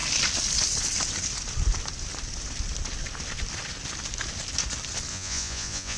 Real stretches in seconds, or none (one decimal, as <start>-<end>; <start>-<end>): 0.0-5.1